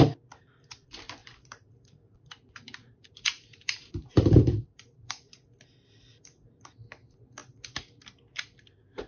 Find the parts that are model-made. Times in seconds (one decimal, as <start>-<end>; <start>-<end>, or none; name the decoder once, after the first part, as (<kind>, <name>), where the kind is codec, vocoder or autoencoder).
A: 1.2-5.3 (vocoder, BigVGAN v2)